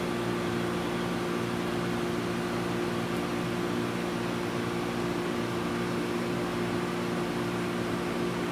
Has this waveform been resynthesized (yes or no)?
no